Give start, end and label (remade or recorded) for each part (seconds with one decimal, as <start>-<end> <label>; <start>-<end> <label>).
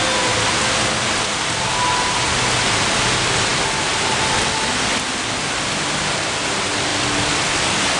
0.0-8.0 recorded